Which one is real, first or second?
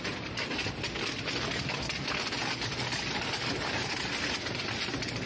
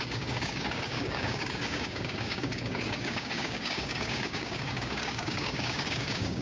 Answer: first